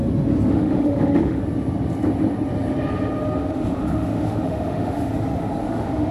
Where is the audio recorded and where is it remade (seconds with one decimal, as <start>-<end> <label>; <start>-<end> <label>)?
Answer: 0.0-0.5 recorded; 0.5-1.4 remade; 1.4-3.5 recorded; 3.5-5.1 remade; 5.1-5.6 recorded; 5.6-6.1 remade